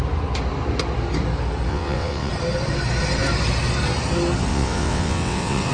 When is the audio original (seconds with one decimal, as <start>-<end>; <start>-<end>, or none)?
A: 0.0-1.7; 2.3-4.5